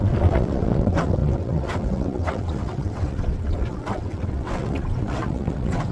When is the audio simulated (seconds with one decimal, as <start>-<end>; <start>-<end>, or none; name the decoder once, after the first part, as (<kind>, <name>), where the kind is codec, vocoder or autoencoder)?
0.0-5.9 (vocoder, WaveNeXt)